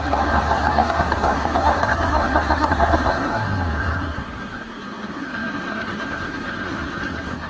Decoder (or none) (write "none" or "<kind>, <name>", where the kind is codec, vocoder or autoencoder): codec, SNAC